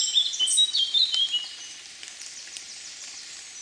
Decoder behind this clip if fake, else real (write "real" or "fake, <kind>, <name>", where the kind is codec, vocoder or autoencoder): real